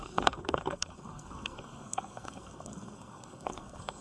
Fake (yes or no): yes